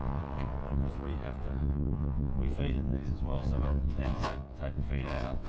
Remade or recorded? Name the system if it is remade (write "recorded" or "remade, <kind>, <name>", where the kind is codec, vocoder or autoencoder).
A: remade, vocoder, WaveNeXt